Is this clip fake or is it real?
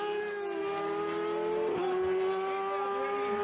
real